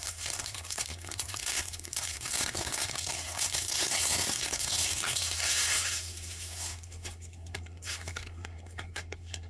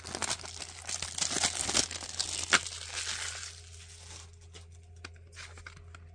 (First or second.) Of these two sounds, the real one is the second